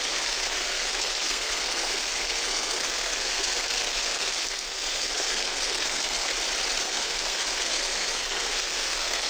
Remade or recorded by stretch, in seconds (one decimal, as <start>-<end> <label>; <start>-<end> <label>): 0.0-6.3 remade; 6.3-6.8 recorded; 6.8-9.3 remade